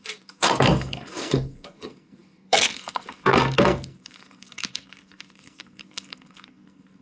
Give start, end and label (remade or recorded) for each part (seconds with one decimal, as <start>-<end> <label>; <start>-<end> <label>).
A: 0.0-7.0 remade